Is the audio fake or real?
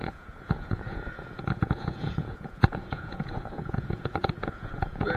fake